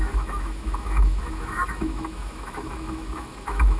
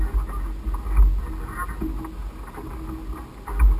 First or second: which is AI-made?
first